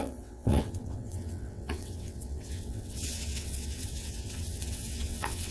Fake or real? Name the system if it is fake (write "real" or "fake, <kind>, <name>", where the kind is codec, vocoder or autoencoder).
fake, vocoder, WaveNeXt